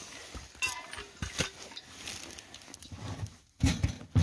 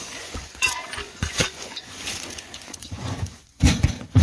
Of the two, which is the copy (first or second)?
second